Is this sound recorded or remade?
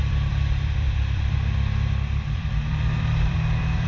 remade